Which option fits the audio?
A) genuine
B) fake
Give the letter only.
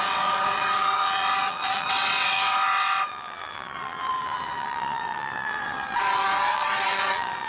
B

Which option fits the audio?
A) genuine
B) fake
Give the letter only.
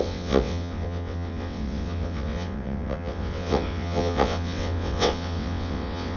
B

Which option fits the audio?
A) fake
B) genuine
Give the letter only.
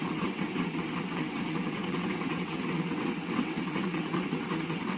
A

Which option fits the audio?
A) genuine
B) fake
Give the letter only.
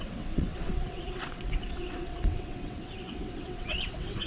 B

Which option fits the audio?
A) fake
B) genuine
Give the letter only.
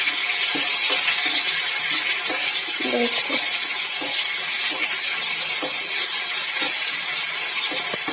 B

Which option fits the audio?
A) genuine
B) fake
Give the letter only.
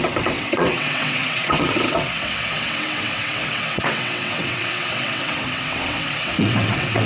B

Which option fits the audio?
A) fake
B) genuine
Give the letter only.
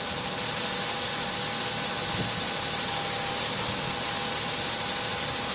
B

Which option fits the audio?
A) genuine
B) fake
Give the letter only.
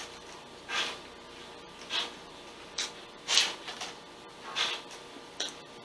A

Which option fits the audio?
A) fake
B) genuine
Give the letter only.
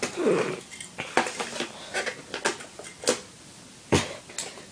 B